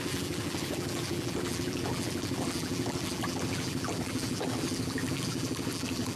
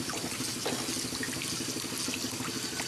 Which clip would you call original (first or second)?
second